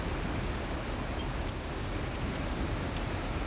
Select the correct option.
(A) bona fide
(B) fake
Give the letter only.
A